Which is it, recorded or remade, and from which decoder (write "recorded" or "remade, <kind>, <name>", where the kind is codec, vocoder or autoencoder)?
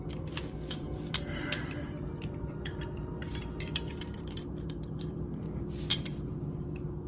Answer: remade, vocoder, BigVGAN v2